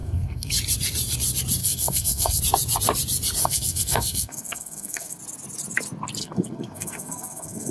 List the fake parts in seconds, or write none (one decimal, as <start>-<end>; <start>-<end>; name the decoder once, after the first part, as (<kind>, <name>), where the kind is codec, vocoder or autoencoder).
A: 0.0-0.5 (codec, SNAC); 1.6-2.4; 3.4-5.2; 6.2-7.7